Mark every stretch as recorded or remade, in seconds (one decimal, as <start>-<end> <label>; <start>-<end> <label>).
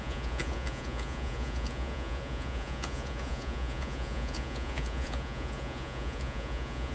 0.0-6.9 remade